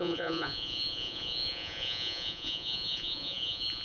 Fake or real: fake